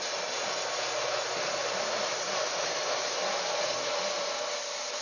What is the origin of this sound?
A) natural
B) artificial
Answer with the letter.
A